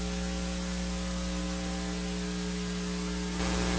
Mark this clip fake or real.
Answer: real